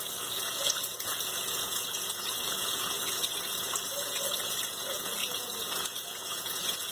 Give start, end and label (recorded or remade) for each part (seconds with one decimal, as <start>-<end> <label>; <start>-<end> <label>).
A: 0.0-6.9 remade